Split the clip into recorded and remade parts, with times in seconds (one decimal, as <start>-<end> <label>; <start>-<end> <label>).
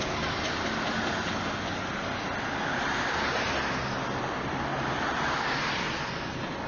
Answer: 0.0-6.7 recorded